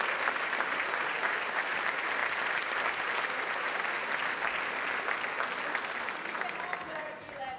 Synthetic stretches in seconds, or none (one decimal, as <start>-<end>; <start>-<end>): none